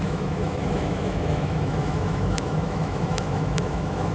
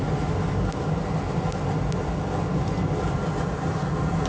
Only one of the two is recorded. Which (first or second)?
second